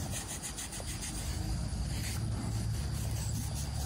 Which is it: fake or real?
real